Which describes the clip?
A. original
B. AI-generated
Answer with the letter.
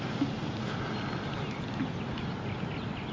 A